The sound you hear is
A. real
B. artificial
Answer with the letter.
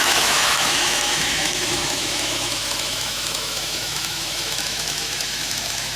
B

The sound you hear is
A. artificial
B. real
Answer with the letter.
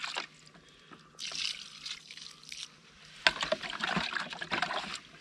B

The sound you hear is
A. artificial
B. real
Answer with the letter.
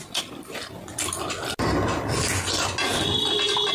B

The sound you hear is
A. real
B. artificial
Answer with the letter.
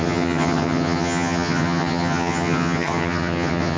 B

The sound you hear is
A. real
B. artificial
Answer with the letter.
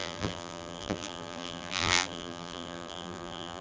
B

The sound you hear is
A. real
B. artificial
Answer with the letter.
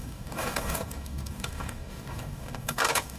B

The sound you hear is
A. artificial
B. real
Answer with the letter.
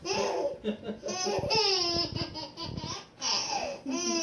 B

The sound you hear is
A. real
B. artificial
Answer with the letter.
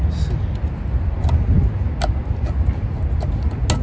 A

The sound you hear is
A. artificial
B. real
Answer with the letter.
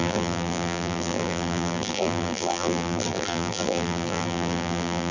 A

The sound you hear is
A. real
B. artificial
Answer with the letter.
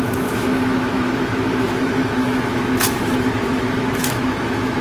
B